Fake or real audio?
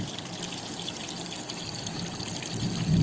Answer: real